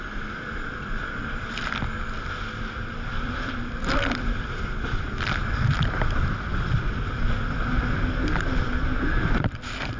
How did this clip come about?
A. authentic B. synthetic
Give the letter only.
B